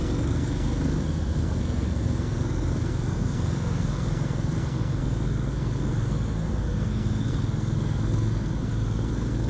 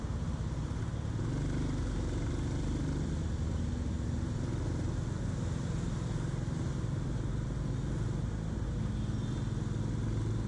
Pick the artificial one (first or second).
first